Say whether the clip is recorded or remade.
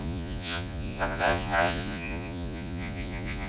remade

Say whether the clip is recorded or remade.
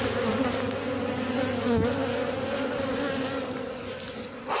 recorded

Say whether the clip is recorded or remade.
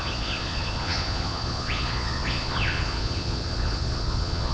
remade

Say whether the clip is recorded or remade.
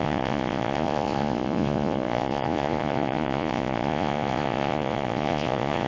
remade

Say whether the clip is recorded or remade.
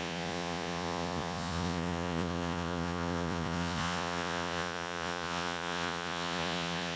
remade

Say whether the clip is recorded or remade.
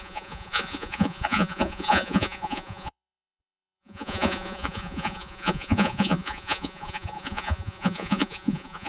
remade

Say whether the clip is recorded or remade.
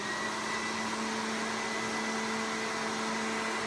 recorded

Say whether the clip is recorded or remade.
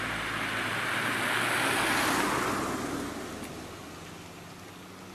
recorded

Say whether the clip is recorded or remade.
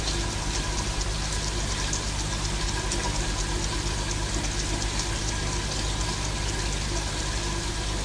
recorded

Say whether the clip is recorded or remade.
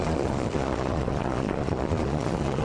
remade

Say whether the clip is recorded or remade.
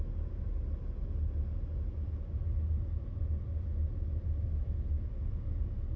recorded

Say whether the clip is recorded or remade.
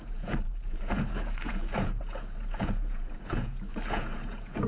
remade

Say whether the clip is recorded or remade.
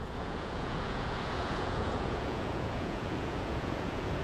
remade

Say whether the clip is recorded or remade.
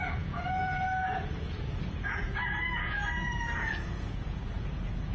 remade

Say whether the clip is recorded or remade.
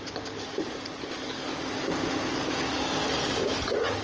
recorded